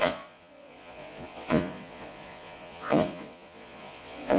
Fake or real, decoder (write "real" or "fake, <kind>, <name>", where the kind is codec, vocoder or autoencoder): fake, vocoder, Vocos